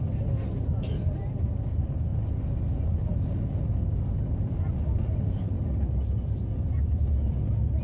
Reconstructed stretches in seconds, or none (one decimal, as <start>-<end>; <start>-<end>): none